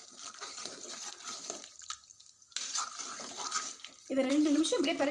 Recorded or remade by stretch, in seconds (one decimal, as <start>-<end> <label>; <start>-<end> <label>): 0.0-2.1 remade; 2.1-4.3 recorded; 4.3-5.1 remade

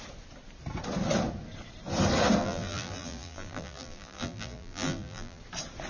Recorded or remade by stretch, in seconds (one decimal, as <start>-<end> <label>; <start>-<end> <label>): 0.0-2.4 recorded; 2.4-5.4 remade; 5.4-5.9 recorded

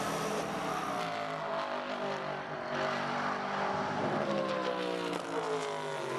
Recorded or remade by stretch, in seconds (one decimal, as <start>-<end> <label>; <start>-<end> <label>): 0.0-6.2 recorded

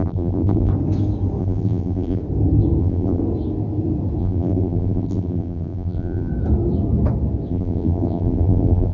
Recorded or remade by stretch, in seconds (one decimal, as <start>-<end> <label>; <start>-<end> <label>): 0.0-0.7 remade; 0.7-1.4 recorded; 1.4-2.2 remade; 2.2-2.8 recorded; 2.8-3.2 remade; 3.2-4.2 recorded; 4.2-6.3 remade; 6.3-7.5 recorded; 7.5-8.9 remade